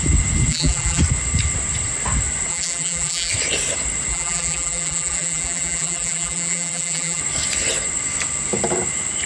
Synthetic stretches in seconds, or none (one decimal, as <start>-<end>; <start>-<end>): 0.5-1.0; 2.5-3.3; 4.1-7.2